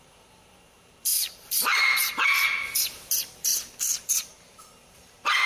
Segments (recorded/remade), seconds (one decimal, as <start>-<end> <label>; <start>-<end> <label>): 0.0-3.5 remade; 3.5-4.0 recorded; 4.0-5.5 remade